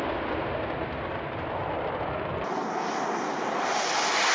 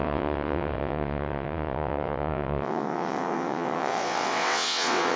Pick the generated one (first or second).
second